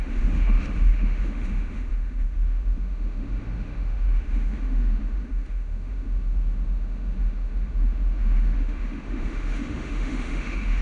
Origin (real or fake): fake